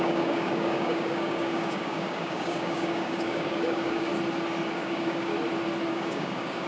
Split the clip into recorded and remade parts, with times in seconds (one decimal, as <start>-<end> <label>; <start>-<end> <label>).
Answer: 0.0-4.1 remade; 4.1-4.7 recorded; 4.7-5.3 remade; 5.3-5.9 recorded; 5.9-6.7 remade